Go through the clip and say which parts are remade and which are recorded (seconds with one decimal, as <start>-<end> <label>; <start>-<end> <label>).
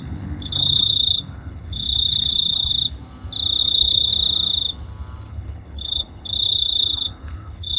0.0-2.7 remade; 2.7-3.6 recorded; 3.6-4.1 remade; 4.1-5.3 recorded; 5.3-7.8 remade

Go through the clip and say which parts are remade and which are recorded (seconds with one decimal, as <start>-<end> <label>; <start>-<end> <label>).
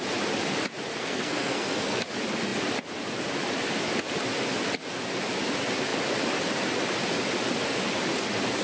0.0-0.9 recorded; 0.9-2.0 remade; 2.0-8.6 recorded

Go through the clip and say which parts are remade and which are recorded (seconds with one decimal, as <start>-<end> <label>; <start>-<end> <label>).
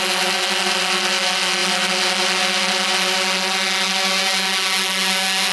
0.0-5.5 recorded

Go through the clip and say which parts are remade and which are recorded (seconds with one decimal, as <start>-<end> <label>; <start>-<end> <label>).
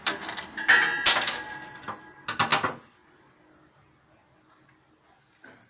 0.0-5.7 recorded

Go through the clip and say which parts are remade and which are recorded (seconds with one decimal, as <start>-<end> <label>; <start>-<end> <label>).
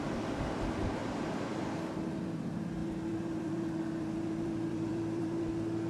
0.0-1.0 recorded; 1.0-1.6 remade; 1.6-2.8 recorded; 2.8-5.5 remade; 5.5-5.9 recorded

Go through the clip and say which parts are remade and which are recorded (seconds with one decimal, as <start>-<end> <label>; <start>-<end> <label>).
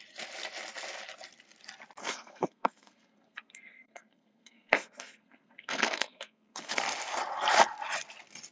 0.0-2.0 recorded; 2.0-6.8 remade; 6.8-8.5 recorded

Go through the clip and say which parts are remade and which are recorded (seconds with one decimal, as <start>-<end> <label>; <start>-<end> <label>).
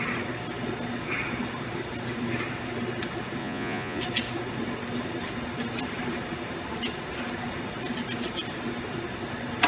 0.0-3.4 recorded; 3.4-4.0 remade; 4.0-9.7 recorded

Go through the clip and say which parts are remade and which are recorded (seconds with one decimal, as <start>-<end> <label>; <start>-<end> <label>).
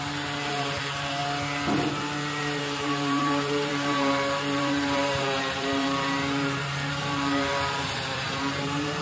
0.0-1.2 remade; 1.2-2.4 recorded; 2.4-9.0 remade